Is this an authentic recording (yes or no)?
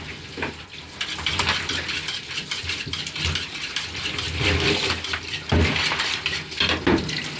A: yes